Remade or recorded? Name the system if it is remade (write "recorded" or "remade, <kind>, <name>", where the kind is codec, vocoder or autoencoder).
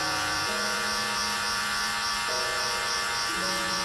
remade, vocoder, Vocos